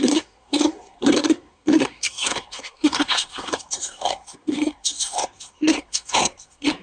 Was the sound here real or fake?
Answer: fake